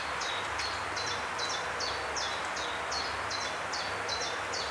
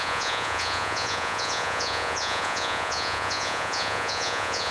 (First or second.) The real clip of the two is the first